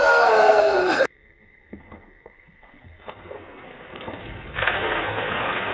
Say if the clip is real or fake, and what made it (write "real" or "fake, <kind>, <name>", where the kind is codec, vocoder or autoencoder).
fake, codec, SNAC